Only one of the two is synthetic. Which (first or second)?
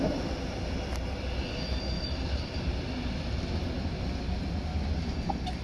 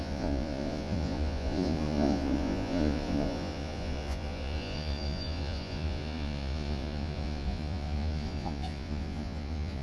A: second